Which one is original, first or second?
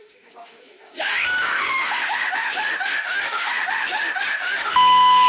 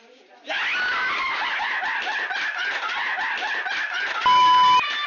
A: second